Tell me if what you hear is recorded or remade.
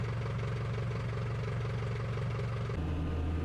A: recorded